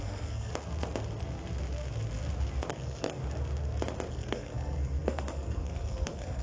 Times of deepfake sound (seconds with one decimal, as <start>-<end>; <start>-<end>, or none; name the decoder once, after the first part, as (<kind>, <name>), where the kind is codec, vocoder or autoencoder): 0.0-0.5 (codec, SNAC); 2.7-3.2; 4.1-6.4